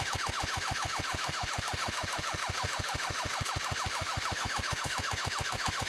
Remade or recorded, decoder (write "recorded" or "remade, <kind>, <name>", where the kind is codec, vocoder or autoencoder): remade, autoencoder, DAC-VAE